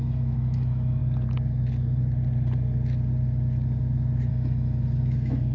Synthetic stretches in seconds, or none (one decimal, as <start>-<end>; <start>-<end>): 0.0-1.0; 4.3-5.5

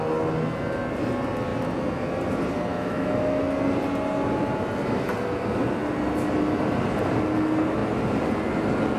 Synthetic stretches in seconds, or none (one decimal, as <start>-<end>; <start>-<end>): 2.7-3.4